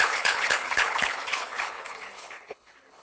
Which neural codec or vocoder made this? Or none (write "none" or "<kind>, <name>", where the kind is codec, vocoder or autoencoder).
codec, HILCodec